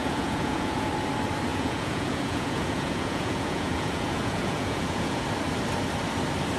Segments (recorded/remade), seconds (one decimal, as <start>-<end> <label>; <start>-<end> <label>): 0.0-0.9 remade; 0.9-1.5 recorded; 1.5-5.2 remade; 5.2-6.6 recorded

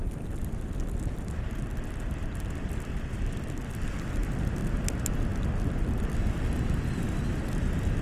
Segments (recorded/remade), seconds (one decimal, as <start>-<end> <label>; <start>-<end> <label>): 0.0-8.0 recorded

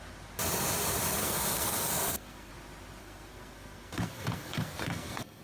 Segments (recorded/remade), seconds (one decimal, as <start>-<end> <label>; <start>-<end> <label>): 0.0-1.2 recorded; 1.2-2.5 remade; 2.5-3.0 recorded; 3.0-5.4 remade

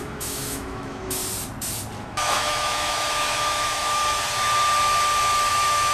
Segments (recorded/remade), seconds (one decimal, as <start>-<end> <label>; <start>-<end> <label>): 0.0-1.2 remade; 1.2-2.0 recorded; 2.0-4.0 remade; 4.0-5.5 recorded; 5.5-5.9 remade